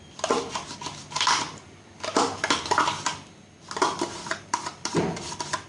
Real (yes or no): no